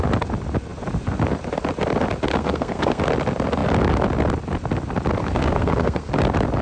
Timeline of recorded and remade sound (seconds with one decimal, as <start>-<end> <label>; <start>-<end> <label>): 0.0-2.3 recorded; 2.3-3.0 remade; 3.0-5.2 recorded; 5.2-6.1 remade; 6.1-6.6 recorded